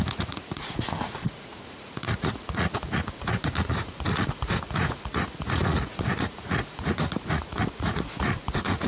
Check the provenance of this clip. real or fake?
fake